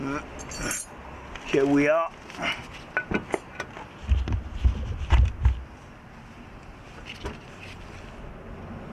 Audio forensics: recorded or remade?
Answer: recorded